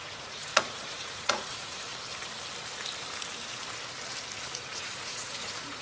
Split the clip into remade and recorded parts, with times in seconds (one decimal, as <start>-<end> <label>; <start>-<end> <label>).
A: 0.0-1.9 remade; 1.9-4.6 recorded; 4.6-5.8 remade